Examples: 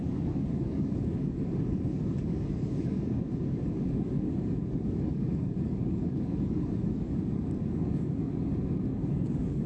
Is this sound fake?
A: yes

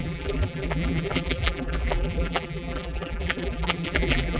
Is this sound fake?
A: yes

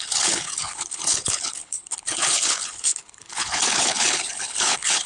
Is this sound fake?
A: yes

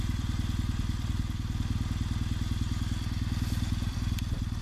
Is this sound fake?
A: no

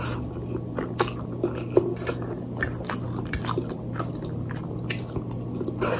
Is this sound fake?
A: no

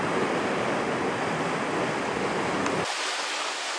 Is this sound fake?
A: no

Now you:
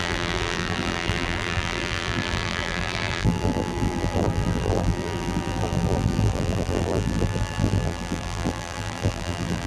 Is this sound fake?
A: yes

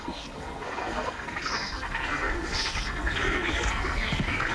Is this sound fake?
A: yes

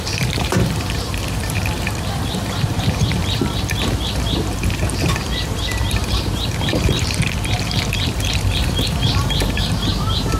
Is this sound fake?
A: yes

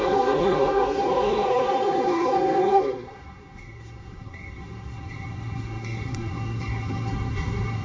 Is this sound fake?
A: yes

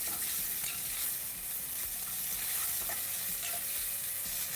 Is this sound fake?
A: no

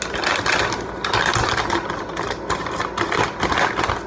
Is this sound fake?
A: no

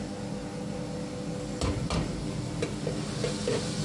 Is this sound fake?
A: no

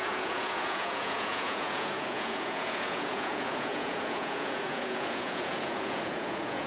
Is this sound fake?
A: yes